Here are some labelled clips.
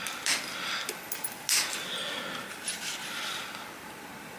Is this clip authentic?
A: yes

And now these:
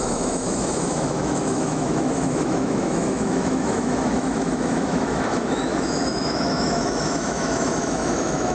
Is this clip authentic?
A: no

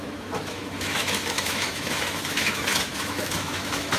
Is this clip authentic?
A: no